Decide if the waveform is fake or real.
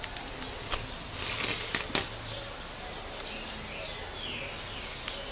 real